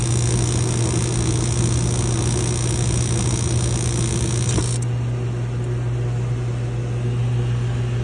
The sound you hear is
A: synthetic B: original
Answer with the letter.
B